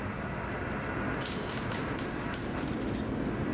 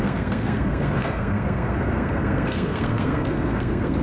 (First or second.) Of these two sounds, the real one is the first